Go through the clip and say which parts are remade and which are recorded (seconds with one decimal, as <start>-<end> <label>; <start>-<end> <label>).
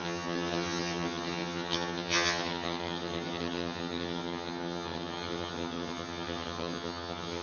0.0-7.4 remade